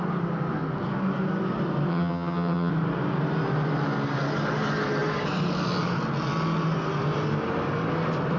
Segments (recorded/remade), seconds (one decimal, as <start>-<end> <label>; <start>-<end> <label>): 0.0-1.9 recorded; 1.9-2.7 remade; 2.7-8.4 recorded